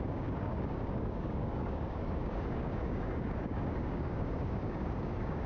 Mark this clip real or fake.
fake